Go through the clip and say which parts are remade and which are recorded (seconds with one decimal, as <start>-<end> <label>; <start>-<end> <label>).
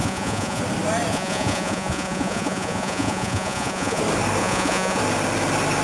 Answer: 0.0-0.6 remade; 0.6-1.1 recorded; 1.1-4.0 remade; 4.0-4.4 recorded; 4.4-5.0 remade; 5.0-5.8 recorded